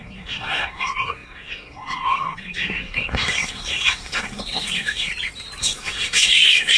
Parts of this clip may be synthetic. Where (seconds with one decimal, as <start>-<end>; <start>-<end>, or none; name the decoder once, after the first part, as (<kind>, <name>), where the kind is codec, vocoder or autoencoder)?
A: 0.0-5.1 (codec, SNAC); 5.6-6.8